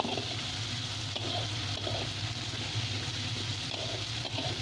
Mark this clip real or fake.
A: real